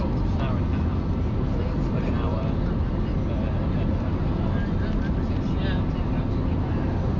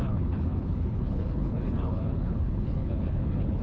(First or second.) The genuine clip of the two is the first